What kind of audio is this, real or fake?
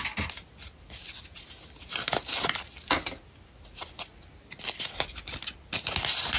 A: real